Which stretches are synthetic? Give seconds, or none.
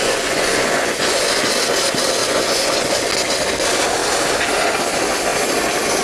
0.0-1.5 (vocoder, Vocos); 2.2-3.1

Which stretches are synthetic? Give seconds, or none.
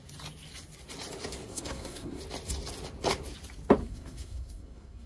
1.5-2.2 (codec, SNAC); 3.8-5.1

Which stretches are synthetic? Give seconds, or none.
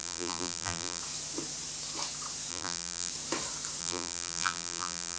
0.0-1.0 (vocoder, BigVGAN v2); 2.5-3.1; 3.8-5.2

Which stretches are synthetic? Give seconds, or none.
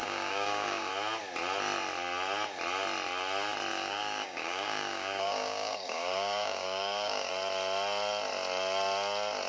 0.0-0.9 (codec, DAC); 3.7-7.3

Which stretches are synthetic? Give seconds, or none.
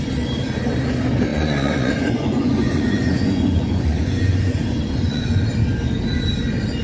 1.3-5.4 (vocoder, Vocos)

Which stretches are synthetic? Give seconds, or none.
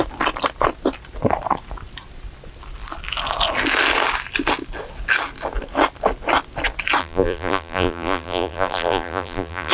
7.0-9.7 (vocoder, BigVGAN v2)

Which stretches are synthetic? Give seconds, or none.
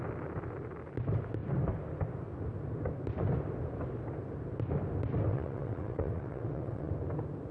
5.3-6.9 (vocoder, WaveNeXt)